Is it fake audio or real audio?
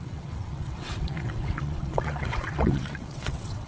fake